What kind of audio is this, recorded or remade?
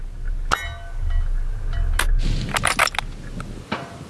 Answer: recorded